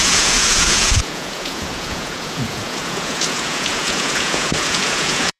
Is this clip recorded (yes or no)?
no